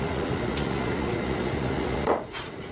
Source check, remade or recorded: remade